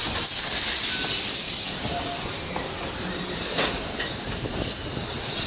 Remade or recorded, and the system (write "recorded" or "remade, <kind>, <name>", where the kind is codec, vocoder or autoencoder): recorded